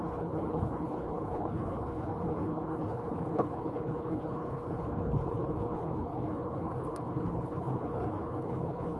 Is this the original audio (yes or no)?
no